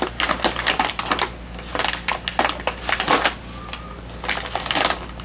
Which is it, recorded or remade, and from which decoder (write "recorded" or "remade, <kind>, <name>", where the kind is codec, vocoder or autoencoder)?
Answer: recorded